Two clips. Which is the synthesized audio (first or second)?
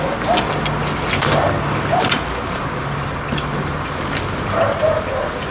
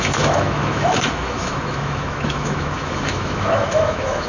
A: second